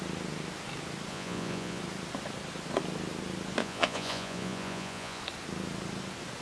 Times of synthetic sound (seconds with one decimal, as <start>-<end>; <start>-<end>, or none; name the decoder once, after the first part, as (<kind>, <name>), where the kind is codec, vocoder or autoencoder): 1.1-1.8 (vocoder, Vocos); 3.6-5.2